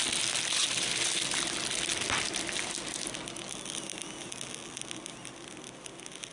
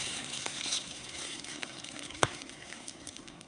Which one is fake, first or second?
second